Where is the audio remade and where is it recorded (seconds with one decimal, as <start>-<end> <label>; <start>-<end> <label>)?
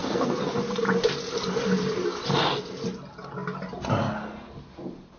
0.0-0.6 remade; 0.6-5.2 recorded